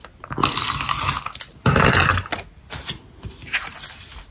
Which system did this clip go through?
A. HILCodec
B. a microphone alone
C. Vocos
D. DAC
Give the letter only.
B